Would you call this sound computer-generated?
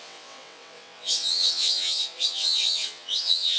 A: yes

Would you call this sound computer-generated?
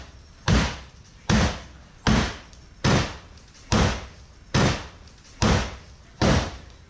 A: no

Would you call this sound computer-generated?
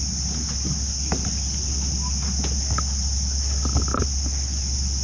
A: no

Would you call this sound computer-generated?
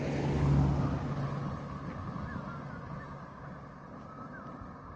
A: no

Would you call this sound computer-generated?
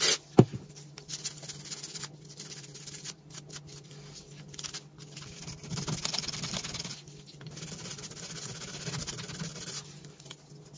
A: no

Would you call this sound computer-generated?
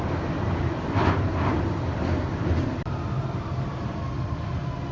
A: no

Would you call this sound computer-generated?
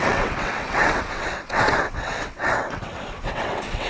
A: yes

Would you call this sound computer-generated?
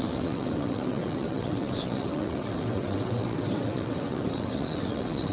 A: yes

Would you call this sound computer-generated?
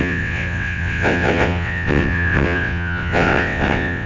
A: yes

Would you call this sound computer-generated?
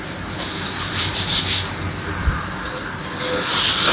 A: no